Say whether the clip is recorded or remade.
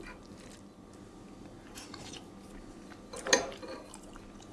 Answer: recorded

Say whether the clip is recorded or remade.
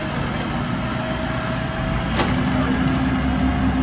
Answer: recorded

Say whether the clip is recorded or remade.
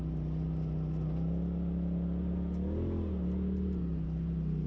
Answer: recorded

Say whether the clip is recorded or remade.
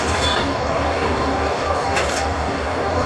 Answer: remade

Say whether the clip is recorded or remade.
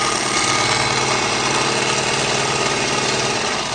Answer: recorded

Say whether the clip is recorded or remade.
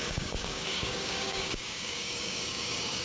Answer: remade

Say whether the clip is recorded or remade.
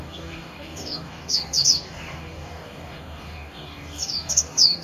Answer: remade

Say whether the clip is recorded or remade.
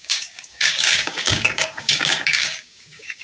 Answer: remade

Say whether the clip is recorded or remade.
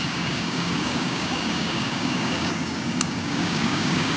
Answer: remade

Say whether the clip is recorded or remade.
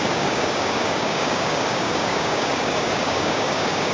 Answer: remade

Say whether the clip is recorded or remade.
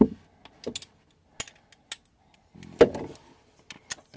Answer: recorded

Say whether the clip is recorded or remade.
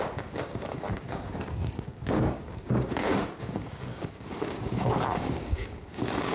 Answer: remade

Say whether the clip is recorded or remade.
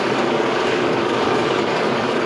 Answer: remade